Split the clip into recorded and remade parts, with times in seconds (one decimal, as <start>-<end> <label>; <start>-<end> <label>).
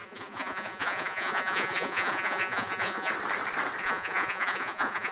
0.0-3.1 remade; 3.1-3.8 recorded; 3.8-5.1 remade